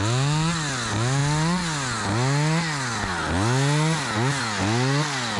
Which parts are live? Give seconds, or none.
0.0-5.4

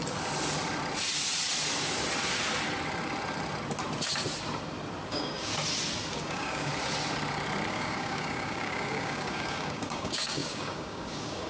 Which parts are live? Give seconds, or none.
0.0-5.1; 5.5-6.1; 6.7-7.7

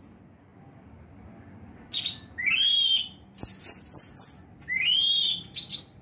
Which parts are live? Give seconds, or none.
0.0-6.0